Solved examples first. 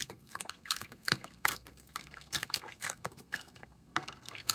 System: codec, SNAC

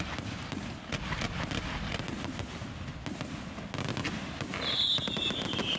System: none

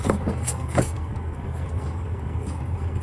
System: codec, SNAC